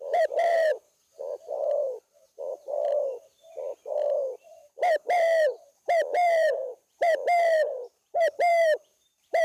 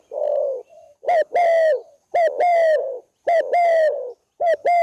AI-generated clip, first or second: first